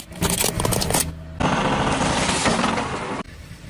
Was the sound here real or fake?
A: real